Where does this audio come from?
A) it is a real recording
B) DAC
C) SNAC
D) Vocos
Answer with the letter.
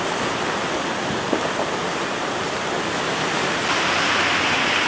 A